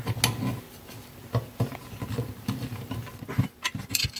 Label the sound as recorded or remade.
recorded